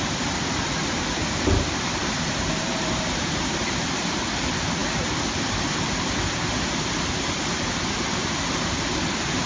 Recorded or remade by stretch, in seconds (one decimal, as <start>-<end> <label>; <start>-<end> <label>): 0.0-2.0 recorded; 2.0-3.6 remade; 3.6-9.5 recorded